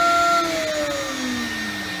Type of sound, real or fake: real